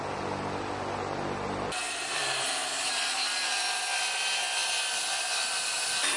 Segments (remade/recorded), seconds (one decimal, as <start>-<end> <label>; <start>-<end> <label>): 0.0-4.6 recorded; 4.6-6.2 remade